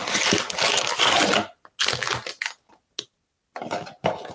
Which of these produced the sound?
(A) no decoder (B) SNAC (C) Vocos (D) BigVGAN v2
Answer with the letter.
A